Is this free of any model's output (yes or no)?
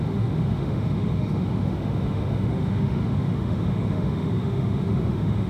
no